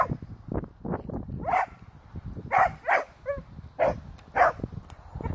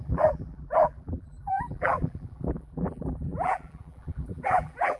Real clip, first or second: first